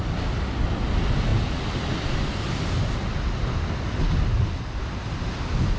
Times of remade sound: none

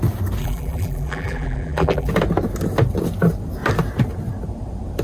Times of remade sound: 0.4-2.1 (vocoder, BigVGAN v2)

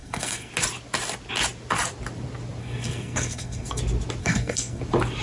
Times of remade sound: 0.0-0.5 (codec, SNAC); 2.6-3.8; 4.2-4.8